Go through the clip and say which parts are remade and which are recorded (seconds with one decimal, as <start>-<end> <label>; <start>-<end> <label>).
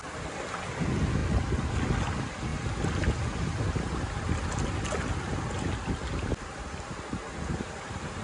0.0-8.2 recorded